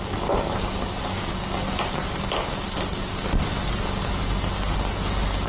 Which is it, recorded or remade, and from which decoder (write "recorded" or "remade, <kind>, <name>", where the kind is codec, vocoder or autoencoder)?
recorded